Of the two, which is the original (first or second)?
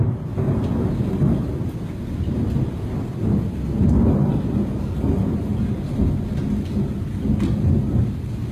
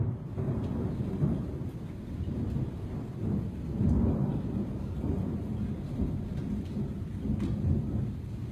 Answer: first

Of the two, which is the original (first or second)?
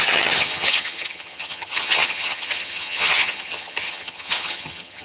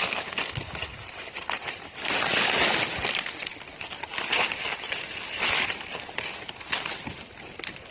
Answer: second